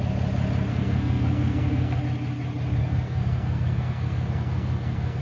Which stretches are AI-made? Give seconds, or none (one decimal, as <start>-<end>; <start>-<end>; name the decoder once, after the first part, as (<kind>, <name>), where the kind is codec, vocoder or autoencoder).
0.7-2.0 (codec, SNAC); 2.8-5.2